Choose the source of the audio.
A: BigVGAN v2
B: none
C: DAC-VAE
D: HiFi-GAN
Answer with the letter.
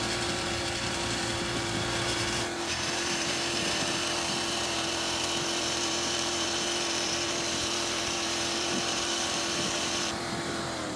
A